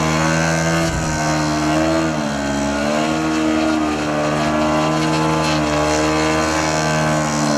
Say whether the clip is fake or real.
real